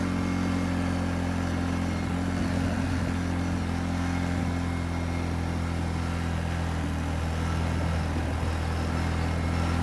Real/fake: real